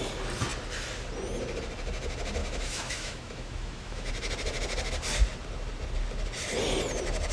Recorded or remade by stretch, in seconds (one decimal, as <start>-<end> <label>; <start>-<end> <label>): 0.0-2.4 recorded; 2.4-4.1 remade; 4.1-7.3 recorded